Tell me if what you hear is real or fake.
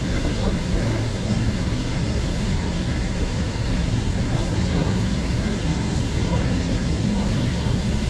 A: fake